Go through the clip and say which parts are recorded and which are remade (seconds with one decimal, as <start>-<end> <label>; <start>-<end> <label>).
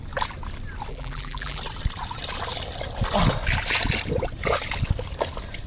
0.0-0.9 recorded; 0.9-1.6 remade; 1.6-5.7 recorded